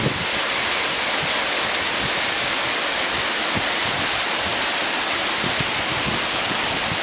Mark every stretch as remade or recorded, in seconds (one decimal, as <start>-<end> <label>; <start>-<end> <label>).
0.0-7.0 recorded